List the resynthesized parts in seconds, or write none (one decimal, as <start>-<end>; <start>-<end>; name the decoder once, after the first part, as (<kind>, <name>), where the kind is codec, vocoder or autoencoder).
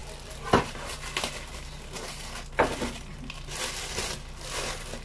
none